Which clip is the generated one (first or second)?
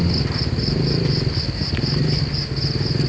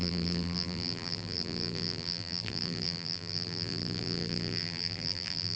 second